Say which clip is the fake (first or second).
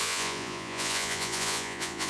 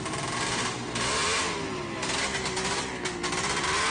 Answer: first